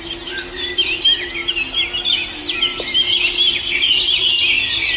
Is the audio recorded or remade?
recorded